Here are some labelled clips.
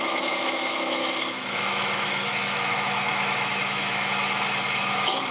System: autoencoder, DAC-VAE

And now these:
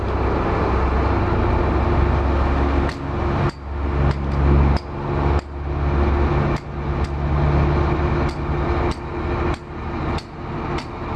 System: none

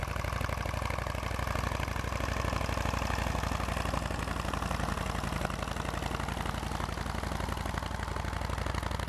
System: none